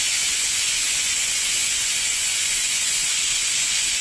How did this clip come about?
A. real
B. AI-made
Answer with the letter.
B